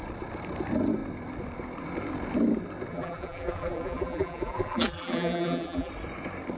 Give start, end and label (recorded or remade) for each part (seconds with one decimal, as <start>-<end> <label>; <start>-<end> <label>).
0.0-2.9 recorded; 2.9-5.9 remade; 5.9-6.6 recorded